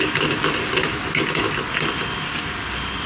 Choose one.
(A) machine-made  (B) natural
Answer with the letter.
B